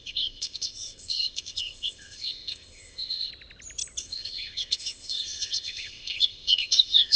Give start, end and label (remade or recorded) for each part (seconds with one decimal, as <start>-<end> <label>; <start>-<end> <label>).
0.0-3.3 remade; 3.3-4.0 recorded; 4.0-7.2 remade

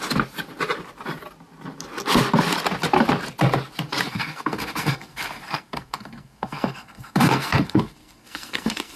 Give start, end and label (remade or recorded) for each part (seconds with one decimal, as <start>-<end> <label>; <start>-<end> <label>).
0.0-4.1 recorded; 4.1-9.0 remade